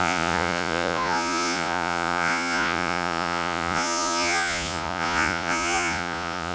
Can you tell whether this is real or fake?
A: fake